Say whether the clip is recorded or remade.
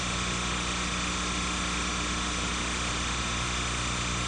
recorded